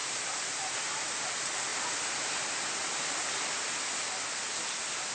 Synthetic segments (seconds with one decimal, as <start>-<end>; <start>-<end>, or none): 0.0-1.2